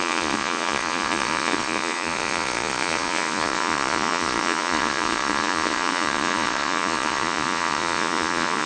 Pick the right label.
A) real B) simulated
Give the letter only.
B